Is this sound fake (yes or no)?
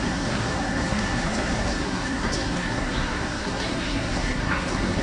yes